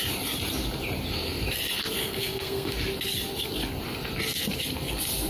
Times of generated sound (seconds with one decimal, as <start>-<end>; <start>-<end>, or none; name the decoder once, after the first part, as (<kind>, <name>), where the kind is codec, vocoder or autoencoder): 2.0-2.7 (codec, SNAC)